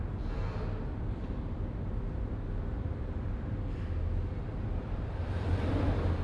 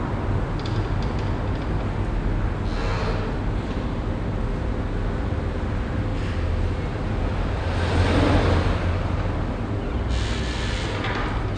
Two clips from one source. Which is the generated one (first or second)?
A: first